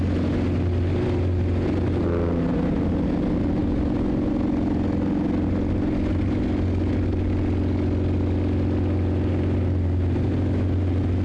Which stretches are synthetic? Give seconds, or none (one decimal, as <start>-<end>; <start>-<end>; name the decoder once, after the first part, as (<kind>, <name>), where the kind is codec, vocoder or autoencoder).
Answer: none